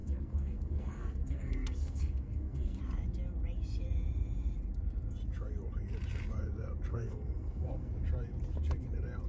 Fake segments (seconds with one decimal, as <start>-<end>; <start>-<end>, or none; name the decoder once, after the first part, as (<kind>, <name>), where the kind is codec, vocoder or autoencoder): 0.0-2.8 (codec, SNAC); 6.9-7.9